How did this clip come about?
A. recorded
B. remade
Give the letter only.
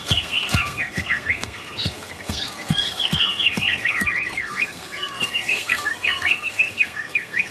B